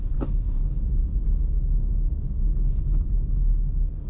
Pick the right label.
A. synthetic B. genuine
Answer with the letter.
B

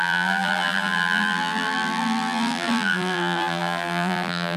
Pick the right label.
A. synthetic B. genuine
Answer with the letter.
A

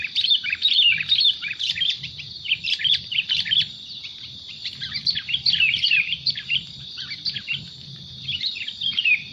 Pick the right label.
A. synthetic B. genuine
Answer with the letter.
A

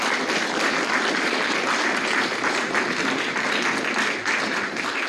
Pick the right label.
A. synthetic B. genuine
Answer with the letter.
A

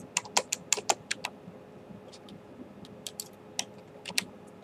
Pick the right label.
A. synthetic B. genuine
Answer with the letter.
B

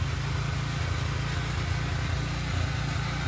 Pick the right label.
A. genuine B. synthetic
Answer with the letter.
A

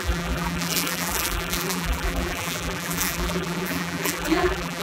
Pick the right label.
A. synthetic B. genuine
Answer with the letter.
A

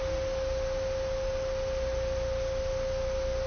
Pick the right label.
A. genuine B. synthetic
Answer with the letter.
A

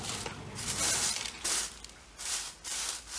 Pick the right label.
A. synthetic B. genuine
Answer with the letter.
B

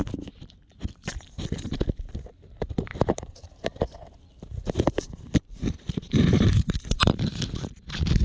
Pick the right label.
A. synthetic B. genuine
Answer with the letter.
A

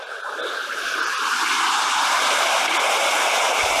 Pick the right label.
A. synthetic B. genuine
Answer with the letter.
B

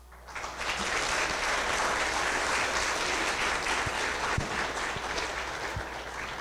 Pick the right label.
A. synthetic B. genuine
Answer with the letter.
B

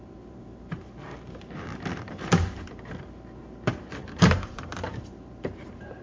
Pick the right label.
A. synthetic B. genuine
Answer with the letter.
A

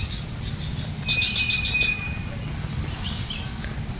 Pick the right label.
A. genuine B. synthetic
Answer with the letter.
A